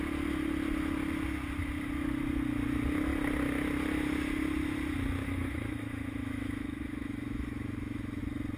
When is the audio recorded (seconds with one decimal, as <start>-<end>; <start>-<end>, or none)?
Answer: 0.0-5.2; 8.2-8.6